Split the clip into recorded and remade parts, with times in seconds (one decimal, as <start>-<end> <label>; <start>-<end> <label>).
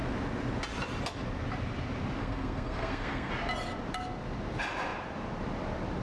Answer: 0.0-2.2 recorded; 2.2-3.3 remade; 3.3-6.0 recorded